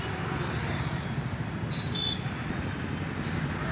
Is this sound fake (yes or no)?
no